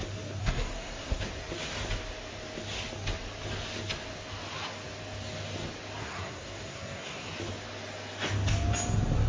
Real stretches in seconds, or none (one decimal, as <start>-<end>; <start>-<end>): 0.0-0.4; 1.2-6.0; 7.3-9.3